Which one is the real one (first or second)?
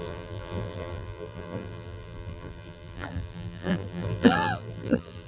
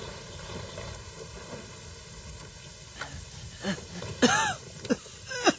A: second